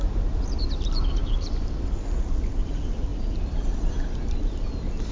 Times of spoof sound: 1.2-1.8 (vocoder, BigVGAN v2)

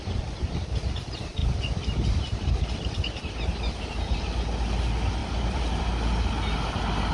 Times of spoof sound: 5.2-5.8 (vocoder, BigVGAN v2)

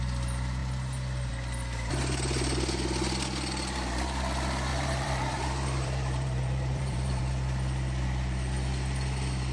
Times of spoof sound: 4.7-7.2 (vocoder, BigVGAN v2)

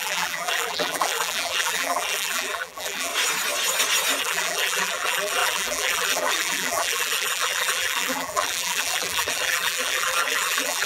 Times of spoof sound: 0.0-3.1 (vocoder, BigVGAN v2); 4.2-10.9

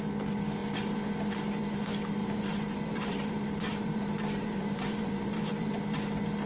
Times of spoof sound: 2.2-5.7 (vocoder, BigVGAN v2)

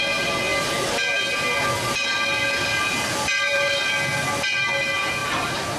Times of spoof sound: 3.3-3.8 (vocoder, BigVGAN v2); 5.2-5.8

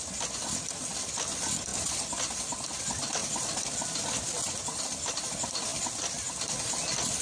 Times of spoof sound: 3.2-5.3 (vocoder, BigVGAN v2); 5.7-6.3

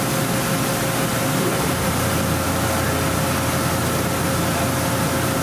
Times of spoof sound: 1.1-2.1 (vocoder, BigVGAN v2)